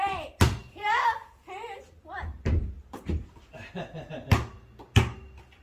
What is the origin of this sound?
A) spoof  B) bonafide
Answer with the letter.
B